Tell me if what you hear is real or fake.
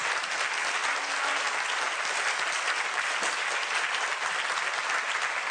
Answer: real